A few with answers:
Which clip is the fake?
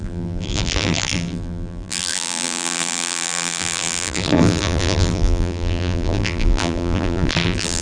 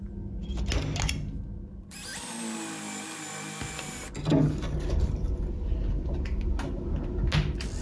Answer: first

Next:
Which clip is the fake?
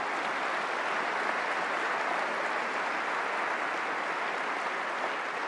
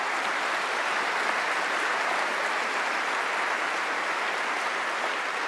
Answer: second